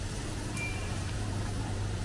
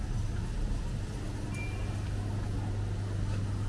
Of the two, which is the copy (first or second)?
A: first